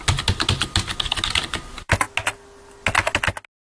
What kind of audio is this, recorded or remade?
recorded